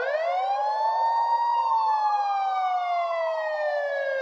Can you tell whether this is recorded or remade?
recorded